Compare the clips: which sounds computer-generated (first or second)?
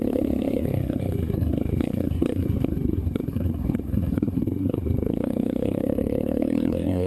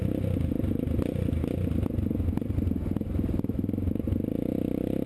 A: first